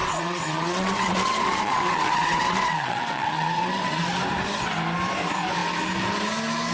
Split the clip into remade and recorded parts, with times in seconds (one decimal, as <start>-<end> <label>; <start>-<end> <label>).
0.0-4.0 remade; 4.0-6.7 recorded